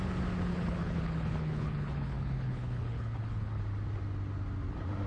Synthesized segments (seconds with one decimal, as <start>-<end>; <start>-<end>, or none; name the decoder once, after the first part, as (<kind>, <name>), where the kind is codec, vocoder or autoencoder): 0.5-3.6 (codec, HILCodec)